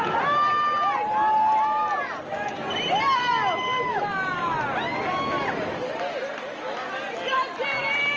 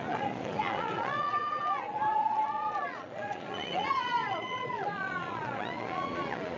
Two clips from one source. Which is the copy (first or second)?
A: second